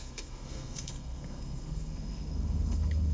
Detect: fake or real fake